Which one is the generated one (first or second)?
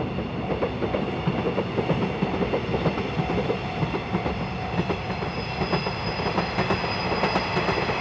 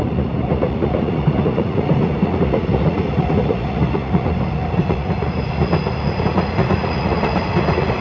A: second